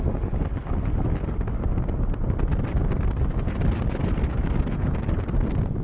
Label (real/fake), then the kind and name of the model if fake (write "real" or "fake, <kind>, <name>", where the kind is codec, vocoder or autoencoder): real